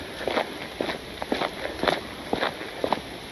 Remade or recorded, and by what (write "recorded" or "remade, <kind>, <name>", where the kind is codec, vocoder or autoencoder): recorded